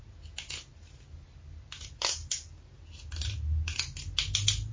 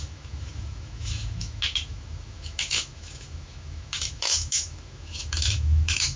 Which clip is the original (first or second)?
first